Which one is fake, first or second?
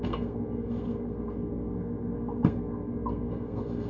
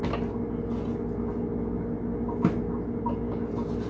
first